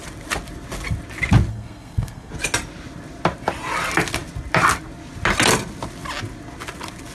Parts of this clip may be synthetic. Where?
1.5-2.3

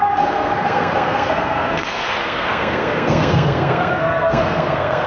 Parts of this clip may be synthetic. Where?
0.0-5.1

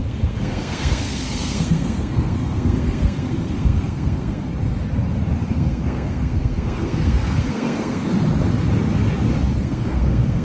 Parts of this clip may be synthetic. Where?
0.0-4.5; 5.5-8.0; 9.6-10.4

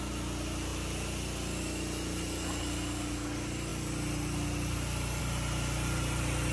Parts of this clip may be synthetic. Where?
none

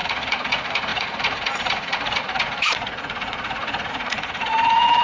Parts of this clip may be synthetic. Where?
0.0-5.0